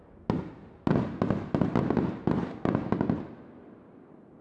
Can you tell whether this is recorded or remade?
recorded